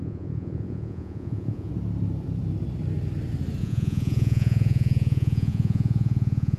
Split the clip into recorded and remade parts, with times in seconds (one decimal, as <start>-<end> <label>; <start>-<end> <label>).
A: 0.0-1.7 remade; 1.7-3.6 recorded; 3.6-6.6 remade